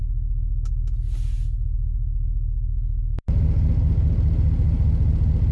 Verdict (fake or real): real